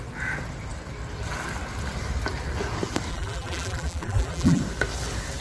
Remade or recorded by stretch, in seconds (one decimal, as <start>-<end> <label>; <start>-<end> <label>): 0.0-3.1 recorded; 3.1-4.6 remade; 4.6-5.4 recorded